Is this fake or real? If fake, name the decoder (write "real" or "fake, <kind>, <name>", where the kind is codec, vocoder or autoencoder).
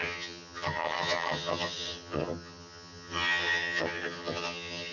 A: fake, vocoder, HiFi-GAN